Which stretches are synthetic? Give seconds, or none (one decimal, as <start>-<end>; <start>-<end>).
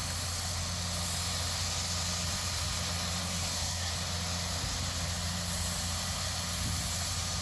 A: 3.2-3.9